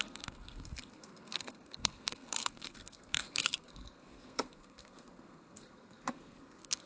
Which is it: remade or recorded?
remade